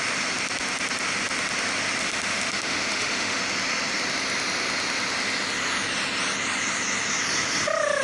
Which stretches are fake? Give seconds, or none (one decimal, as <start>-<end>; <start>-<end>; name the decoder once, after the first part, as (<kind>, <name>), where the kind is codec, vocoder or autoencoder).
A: 2.0-3.4 (autoencoder, DAC-VAE)